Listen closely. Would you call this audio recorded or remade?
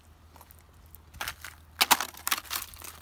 recorded